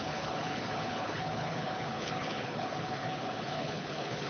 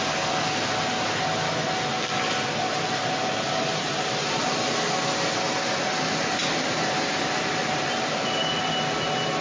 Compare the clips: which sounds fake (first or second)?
first